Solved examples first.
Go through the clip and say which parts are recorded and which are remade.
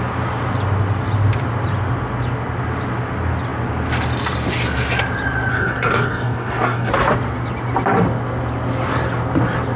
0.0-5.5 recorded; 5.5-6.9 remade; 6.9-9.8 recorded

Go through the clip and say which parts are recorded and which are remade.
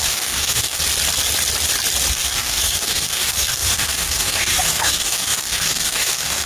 0.0-0.8 remade; 0.8-2.1 recorded; 2.1-6.5 remade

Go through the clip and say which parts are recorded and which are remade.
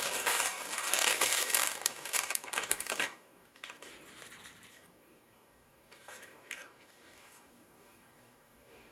0.0-3.9 remade; 3.9-4.7 recorded; 4.7-8.9 remade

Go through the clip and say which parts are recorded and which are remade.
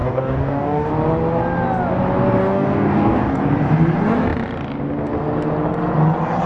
0.0-0.9 remade; 0.9-2.4 recorded; 2.4-3.4 remade; 3.4-6.5 recorded